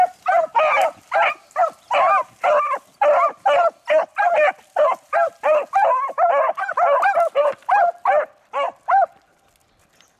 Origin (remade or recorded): recorded